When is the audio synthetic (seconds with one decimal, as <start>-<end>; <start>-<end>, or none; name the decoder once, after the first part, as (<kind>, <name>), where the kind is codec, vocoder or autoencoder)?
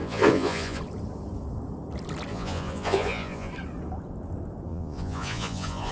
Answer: 0.0-0.8 (vocoder, Vocos); 2.3-3.5; 4.7-5.9